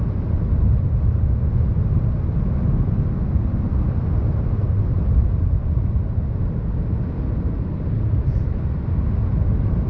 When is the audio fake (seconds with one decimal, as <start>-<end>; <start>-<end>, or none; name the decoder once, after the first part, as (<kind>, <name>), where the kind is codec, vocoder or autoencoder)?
4.6-5.9 (vocoder, BigVGAN v2)